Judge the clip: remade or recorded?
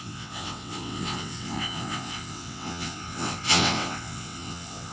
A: remade